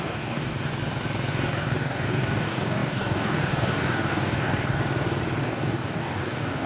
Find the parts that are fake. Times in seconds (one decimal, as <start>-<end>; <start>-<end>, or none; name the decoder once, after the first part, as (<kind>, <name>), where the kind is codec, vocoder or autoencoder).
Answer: 0.0-0.7 (codec, DAC); 1.3-4.8; 5.4-6.7